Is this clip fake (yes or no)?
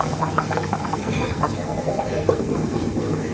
yes